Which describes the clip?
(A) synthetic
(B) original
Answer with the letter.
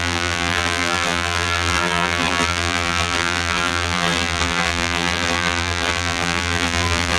A